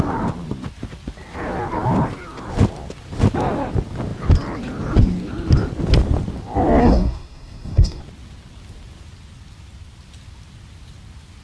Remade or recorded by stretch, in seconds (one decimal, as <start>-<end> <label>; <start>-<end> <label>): 0.0-6.8 recorded; 6.8-8.0 remade; 8.0-11.4 recorded